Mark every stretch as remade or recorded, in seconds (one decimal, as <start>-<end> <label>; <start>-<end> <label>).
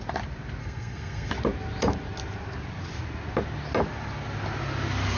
0.0-0.6 recorded; 0.6-1.3 remade; 1.3-5.2 recorded